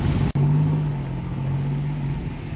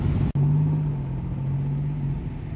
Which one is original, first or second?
second